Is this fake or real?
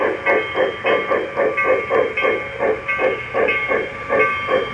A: real